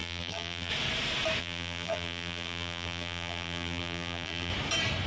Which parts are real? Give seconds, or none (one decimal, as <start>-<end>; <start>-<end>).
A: 0.7-1.4; 4.5-5.1